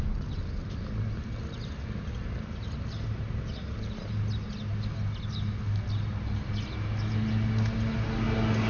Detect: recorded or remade recorded